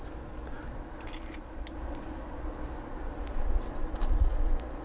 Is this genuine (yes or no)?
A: yes